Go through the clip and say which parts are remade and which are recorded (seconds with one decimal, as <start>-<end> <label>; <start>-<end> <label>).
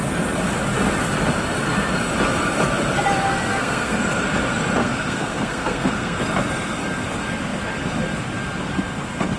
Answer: 0.0-3.5 recorded; 3.5-4.0 remade; 4.0-4.8 recorded; 4.8-6.2 remade; 6.2-9.4 recorded